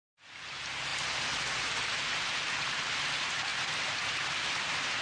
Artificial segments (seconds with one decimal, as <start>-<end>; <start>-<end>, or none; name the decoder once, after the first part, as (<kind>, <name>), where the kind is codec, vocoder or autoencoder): 3.5-4.3 (vocoder, BigVGAN v2)